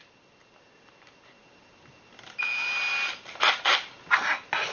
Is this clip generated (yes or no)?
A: no